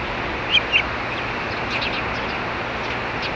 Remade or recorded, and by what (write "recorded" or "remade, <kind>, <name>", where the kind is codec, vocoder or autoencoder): recorded